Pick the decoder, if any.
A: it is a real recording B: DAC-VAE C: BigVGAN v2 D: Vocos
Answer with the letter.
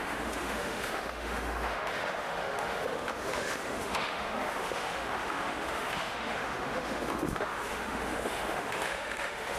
B